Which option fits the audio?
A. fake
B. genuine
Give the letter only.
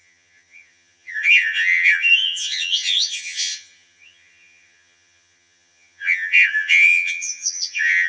A